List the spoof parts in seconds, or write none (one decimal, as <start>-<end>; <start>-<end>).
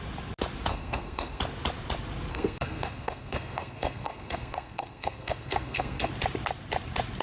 0.7-1.4; 2.3-6.1